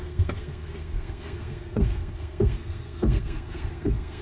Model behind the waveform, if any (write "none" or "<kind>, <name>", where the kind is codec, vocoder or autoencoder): codec, SNAC